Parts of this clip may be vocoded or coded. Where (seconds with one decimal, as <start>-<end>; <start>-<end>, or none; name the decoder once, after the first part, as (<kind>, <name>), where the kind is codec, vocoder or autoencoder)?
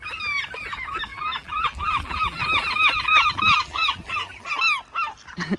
1.1-4.5 (vocoder, BigVGAN v2)